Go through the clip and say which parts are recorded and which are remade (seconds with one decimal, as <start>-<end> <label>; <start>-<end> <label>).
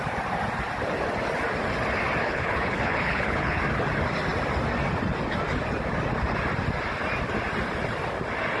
0.0-2.2 recorded; 2.2-3.6 remade; 3.6-8.6 recorded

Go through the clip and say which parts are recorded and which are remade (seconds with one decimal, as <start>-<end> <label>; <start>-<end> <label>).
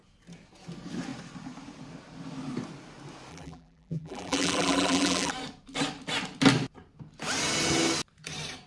0.0-3.3 recorded; 3.3-5.3 remade; 5.3-8.7 recorded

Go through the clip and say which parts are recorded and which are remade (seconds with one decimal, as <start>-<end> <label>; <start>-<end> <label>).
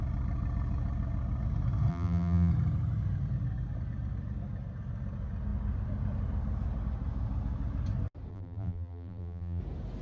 0.0-1.9 recorded; 1.9-2.5 remade; 2.5-8.3 recorded; 8.3-9.6 remade; 9.6-10.0 recorded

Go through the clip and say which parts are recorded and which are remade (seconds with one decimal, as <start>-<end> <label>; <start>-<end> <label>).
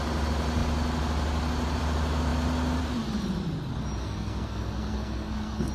0.0-4.0 recorded; 4.0-5.7 remade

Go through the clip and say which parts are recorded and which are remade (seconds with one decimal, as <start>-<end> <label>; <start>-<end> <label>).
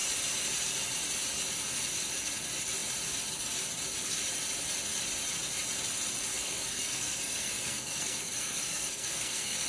0.0-6.3 recorded; 6.3-9.7 remade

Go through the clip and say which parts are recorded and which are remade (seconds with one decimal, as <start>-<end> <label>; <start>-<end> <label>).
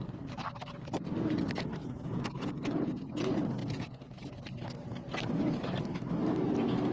0.0-1.8 recorded; 1.8-3.1 remade; 3.1-3.6 recorded; 3.6-4.2 remade; 4.2-6.9 recorded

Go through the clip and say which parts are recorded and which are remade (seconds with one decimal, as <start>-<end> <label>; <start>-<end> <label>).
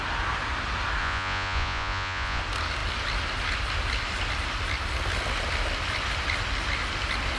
0.0-1.0 recorded; 1.0-2.4 remade; 2.4-7.4 recorded